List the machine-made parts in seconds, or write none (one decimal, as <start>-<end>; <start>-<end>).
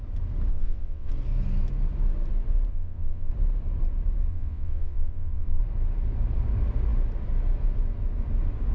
0.5-1.1; 2.7-3.3; 4.3-5.6